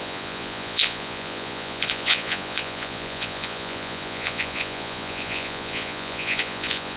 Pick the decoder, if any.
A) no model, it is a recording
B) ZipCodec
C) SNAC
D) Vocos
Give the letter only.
D